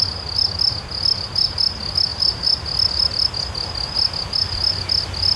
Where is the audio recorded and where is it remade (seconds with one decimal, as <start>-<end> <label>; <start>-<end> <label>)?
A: 0.0-5.4 recorded